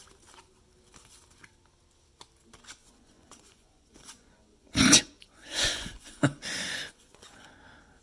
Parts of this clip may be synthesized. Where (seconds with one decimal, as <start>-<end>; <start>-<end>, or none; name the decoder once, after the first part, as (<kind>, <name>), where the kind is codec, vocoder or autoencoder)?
2.8-7.6 (vocoder, Vocos)